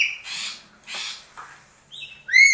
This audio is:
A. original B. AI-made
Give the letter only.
A